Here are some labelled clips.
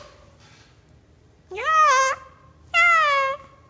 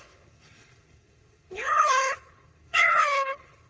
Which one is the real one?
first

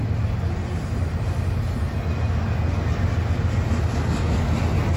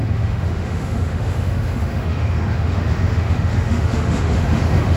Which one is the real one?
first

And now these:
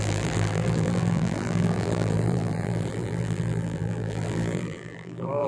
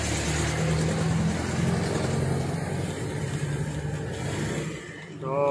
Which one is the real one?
second